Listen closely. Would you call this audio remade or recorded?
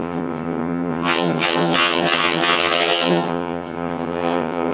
remade